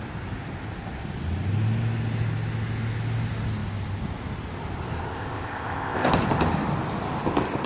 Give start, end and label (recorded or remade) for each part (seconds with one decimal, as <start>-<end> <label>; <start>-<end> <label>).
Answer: 0.0-5.1 recorded; 5.1-6.1 remade; 6.1-7.7 recorded